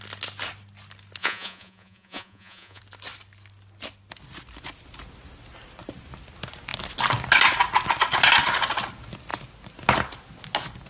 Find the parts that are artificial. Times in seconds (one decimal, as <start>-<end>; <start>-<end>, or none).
1.2-2.8